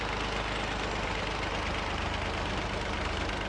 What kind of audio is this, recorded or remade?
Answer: recorded